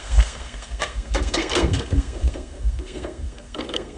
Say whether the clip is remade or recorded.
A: remade